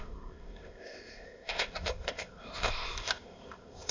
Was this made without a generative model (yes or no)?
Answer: no